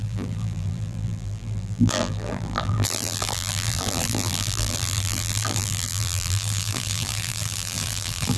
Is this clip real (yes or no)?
no